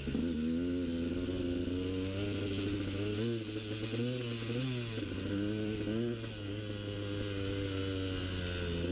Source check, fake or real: real